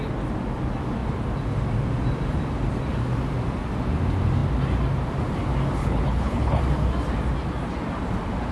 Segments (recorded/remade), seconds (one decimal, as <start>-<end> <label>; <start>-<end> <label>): 0.0-5.8 recorded; 5.8-6.6 remade; 6.6-8.5 recorded